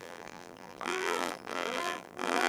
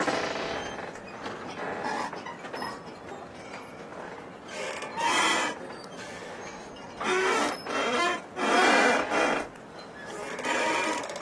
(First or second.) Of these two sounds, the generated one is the first